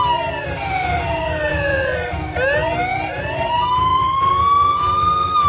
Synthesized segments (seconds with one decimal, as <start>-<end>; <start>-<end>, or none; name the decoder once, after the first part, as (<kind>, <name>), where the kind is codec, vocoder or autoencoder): 1.5-2.1 (vocoder, BigVGAN v2); 2.9-3.5; 3.9-4.4